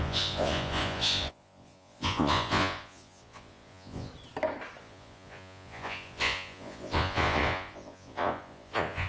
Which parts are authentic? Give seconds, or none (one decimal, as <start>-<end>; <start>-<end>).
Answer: 4.1-4.8